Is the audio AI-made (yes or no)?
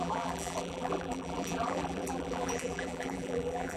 yes